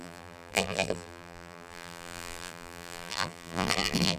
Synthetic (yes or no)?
yes